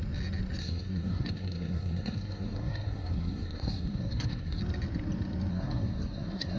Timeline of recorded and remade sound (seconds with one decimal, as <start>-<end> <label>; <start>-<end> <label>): 0.0-0.6 recorded; 0.6-4.6 remade; 4.6-5.5 recorded; 5.5-6.6 remade